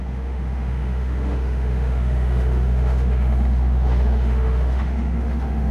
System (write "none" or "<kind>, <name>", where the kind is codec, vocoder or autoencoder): autoencoder, DAC-VAE